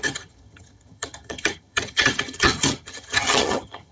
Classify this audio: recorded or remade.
remade